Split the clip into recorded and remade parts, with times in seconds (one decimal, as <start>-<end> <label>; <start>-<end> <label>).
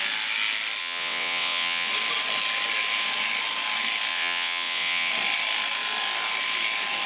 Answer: 0.0-0.8 recorded; 0.8-1.9 remade; 1.9-4.1 recorded; 4.1-5.1 remade; 5.1-7.1 recorded